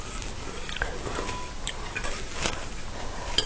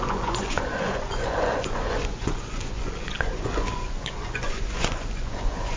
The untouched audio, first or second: first